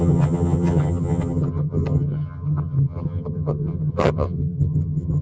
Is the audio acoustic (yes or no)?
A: no